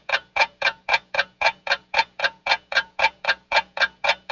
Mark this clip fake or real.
fake